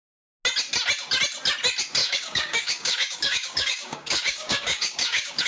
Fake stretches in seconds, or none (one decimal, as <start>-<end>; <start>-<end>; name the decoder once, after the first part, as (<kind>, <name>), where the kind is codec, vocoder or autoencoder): 2.0-5.5 (codec, DAC)